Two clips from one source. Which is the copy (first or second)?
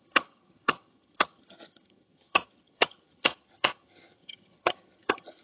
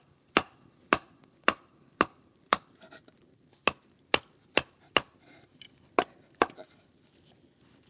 first